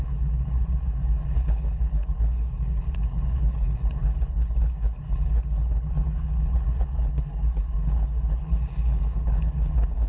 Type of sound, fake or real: fake